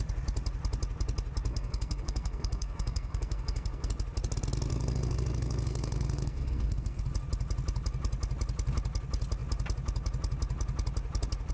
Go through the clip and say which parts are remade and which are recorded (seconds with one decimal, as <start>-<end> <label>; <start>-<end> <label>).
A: 0.0-1.5 recorded; 1.5-3.9 remade; 3.9-4.7 recorded; 4.7-7.0 remade; 7.0-11.5 recorded